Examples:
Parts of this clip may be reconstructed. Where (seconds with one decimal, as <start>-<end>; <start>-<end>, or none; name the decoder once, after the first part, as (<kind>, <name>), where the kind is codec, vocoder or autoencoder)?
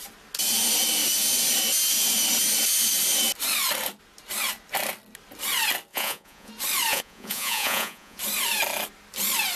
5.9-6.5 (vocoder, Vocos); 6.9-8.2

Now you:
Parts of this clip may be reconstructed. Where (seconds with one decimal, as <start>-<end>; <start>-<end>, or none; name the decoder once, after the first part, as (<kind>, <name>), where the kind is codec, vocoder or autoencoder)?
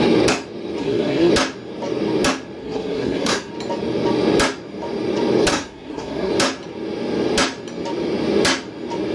0.8-1.3 (codec, SNAC); 2.6-3.5; 5.5-6.3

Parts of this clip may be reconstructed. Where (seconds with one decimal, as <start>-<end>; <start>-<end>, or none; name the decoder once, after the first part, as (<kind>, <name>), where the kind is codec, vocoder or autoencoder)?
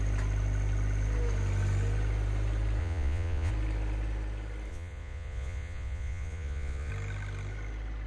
2.8-3.5 (vocoder, Vocos); 4.7-6.9